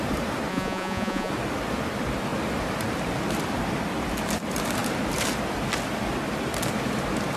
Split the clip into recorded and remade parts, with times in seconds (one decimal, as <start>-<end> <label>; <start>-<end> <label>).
0.0-0.5 recorded; 0.5-1.3 remade; 1.3-7.4 recorded